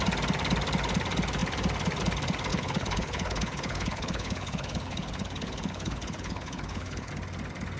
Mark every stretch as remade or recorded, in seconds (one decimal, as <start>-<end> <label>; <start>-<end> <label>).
0.0-2.5 recorded; 2.5-7.1 remade; 7.1-7.8 recorded